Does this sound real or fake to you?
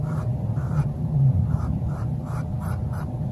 fake